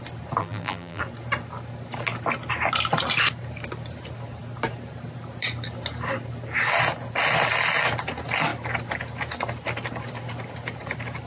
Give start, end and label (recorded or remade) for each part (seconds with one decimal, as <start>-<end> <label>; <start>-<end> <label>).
0.0-0.4 recorded; 0.4-1.0 remade; 1.0-11.3 recorded